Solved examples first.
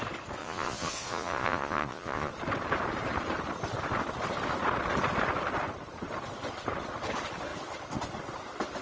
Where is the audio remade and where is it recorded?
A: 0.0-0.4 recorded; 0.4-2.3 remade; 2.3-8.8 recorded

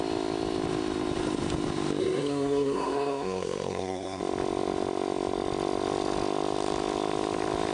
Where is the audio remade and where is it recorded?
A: 0.0-2.0 recorded; 2.0-4.2 remade; 4.2-7.7 recorded

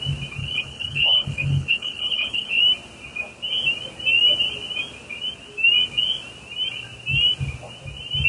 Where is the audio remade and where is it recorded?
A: 0.0-0.4 recorded; 0.4-2.6 remade; 2.6-8.3 recorded

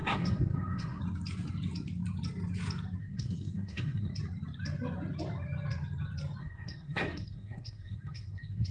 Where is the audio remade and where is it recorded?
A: 0.0-1.0 remade; 1.0-3.0 recorded; 3.0-4.1 remade; 4.1-6.4 recorded; 6.4-8.7 remade

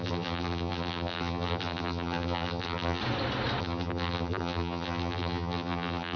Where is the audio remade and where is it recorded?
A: 0.0-3.0 remade; 3.0-3.6 recorded; 3.6-6.2 remade